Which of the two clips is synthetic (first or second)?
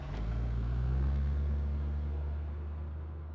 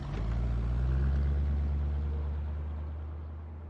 first